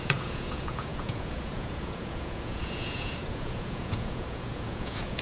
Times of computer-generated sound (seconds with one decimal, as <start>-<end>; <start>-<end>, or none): 0.0-5.2